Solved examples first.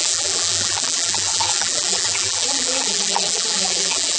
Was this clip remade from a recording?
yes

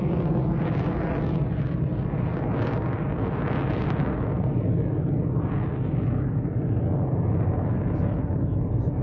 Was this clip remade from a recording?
no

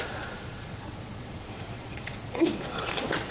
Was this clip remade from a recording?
yes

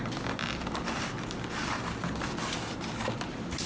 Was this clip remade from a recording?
no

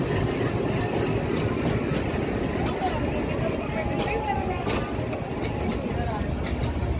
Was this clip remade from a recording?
no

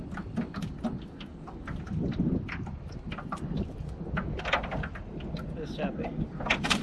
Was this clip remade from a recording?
no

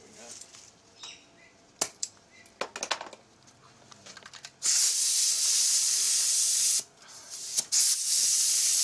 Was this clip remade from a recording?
no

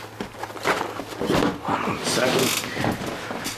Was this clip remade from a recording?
no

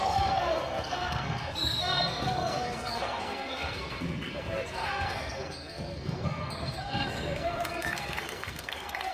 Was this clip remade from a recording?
yes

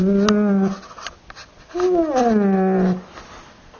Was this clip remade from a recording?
no